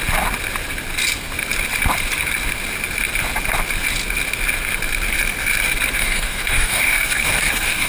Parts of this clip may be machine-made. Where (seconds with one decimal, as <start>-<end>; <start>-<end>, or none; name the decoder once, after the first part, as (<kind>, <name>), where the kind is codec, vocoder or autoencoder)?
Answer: 6.0-7.9 (codec, DAC)